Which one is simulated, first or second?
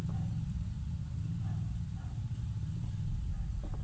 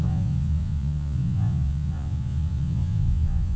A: second